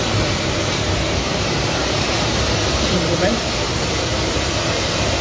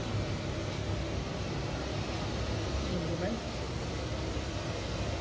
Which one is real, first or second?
second